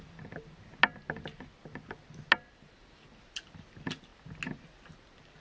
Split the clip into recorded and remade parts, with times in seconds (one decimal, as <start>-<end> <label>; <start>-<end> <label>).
0.0-5.4 recorded